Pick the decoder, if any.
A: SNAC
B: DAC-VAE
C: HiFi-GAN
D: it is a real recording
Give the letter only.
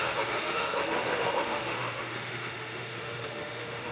B